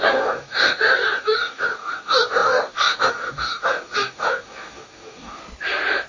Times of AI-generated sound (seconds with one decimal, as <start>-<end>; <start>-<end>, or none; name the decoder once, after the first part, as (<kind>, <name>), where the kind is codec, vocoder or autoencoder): 0.0-5.4 (codec, DAC)